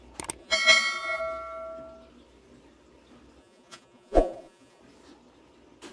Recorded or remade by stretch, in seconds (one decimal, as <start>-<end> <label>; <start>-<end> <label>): 0.0-0.4 recorded; 0.4-1.2 remade; 1.2-3.4 recorded; 3.4-4.8 remade; 4.8-5.9 recorded